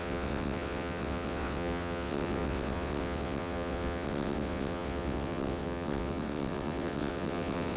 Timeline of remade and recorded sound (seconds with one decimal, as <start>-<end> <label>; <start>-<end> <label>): 0.0-7.8 remade

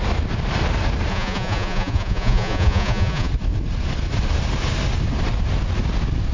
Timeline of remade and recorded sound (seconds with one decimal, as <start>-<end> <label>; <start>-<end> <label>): 0.0-1.1 recorded; 1.1-3.3 remade; 3.3-6.3 recorded